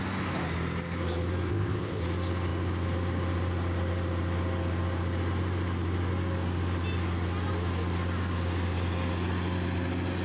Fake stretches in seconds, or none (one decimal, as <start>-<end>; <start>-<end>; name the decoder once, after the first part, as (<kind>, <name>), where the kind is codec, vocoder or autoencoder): 1.5-2.0 (codec, ZipCodec)